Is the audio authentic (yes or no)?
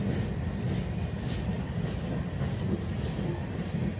yes